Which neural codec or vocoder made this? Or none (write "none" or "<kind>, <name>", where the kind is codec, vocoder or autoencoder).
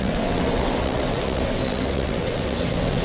vocoder, WaveNeXt